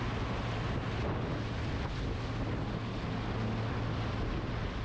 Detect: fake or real real